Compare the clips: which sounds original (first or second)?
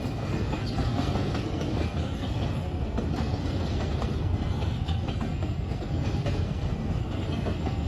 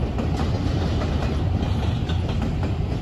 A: second